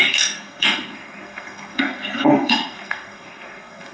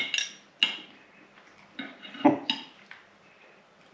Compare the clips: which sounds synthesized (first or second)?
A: first